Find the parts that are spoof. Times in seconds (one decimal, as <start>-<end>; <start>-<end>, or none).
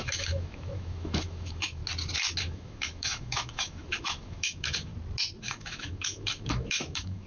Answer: 0.0-1.8; 2.4-4.9; 5.4-7.3